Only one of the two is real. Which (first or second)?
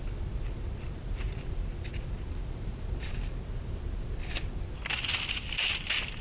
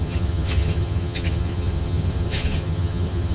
first